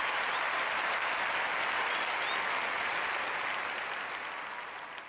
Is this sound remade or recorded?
recorded